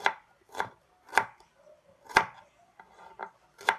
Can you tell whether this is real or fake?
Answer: fake